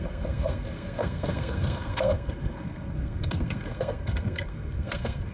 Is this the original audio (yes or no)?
no